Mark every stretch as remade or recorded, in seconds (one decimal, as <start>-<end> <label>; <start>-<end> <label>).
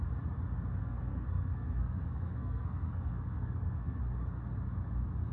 0.0-0.8 recorded; 0.8-4.0 remade; 4.0-5.3 recorded